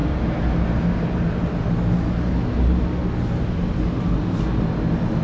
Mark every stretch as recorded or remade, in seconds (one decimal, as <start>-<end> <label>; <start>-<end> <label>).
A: 0.0-5.2 recorded